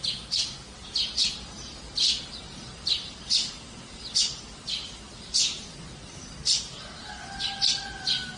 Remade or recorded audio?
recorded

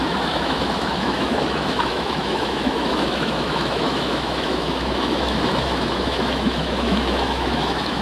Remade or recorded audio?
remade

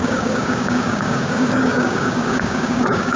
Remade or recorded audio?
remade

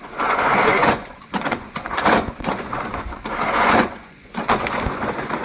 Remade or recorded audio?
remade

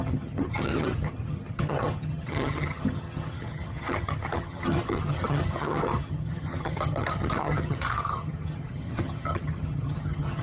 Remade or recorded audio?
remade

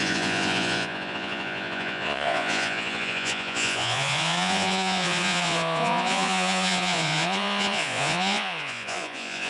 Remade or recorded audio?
remade